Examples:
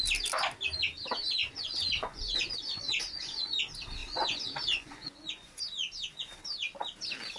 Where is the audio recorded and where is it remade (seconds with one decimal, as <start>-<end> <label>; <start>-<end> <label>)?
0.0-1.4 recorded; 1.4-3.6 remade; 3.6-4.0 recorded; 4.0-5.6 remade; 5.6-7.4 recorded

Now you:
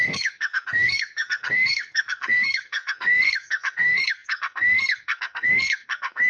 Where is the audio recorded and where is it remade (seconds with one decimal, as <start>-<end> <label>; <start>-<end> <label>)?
0.0-6.3 remade

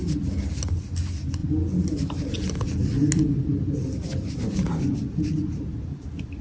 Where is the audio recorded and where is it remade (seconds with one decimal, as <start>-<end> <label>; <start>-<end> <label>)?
0.0-6.4 recorded

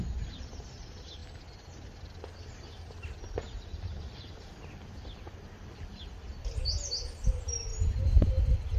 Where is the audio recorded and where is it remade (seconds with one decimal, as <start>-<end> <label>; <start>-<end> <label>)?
0.0-3.9 recorded; 3.9-5.4 remade; 5.4-7.7 recorded; 7.7-8.3 remade; 8.3-8.8 recorded

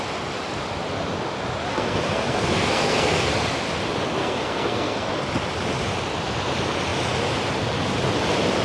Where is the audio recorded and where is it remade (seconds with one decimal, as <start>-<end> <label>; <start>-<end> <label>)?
0.0-1.7 recorded; 1.7-3.3 remade; 3.3-4.2 recorded; 4.2-5.1 remade; 5.1-8.6 recorded

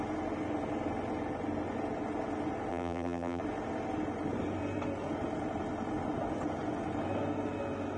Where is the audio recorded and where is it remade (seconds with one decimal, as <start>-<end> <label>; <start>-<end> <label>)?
0.0-2.7 recorded; 2.7-3.4 remade; 3.4-8.0 recorded

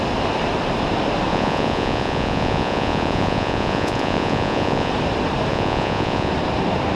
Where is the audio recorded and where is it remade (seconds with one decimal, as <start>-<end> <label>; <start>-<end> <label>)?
0.0-1.3 recorded; 1.3-4.9 remade; 4.9-5.5 recorded; 5.5-6.3 remade; 6.3-7.0 recorded

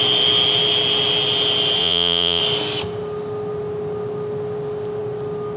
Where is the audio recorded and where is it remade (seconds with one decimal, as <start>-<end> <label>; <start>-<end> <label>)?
0.0-1.8 recorded; 1.8-2.4 remade; 2.4-5.6 recorded